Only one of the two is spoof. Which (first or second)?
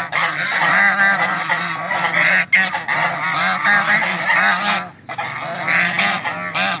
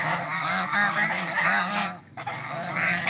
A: second